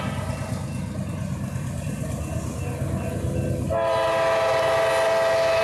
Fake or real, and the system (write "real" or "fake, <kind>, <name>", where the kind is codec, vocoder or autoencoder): real